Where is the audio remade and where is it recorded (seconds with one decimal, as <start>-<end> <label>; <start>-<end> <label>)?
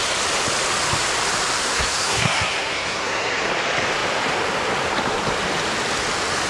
0.0-1.6 recorded; 1.6-3.5 remade; 3.5-6.5 recorded